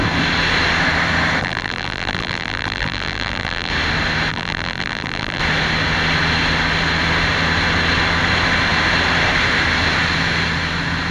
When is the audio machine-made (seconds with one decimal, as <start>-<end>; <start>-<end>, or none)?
1.4-3.7; 4.3-5.4